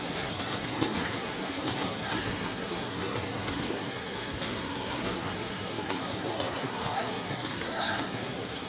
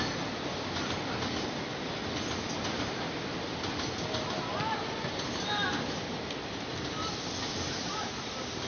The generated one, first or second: first